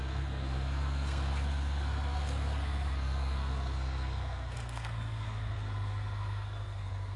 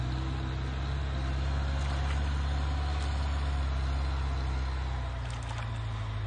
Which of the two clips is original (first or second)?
second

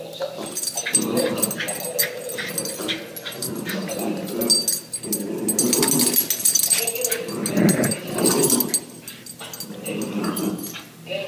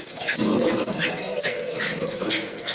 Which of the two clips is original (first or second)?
first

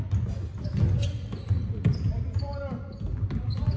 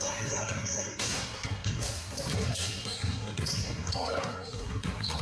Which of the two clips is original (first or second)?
first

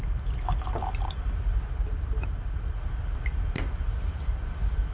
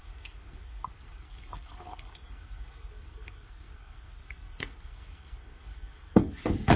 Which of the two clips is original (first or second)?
first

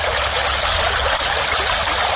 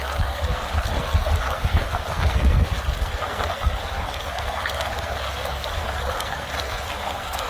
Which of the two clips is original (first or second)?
first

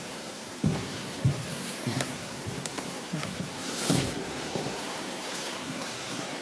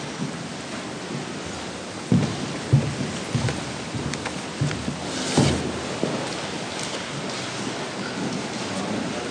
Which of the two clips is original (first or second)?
second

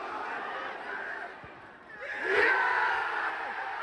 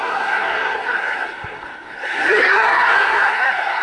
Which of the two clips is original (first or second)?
first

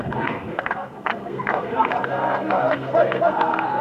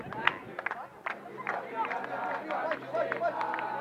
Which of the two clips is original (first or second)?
second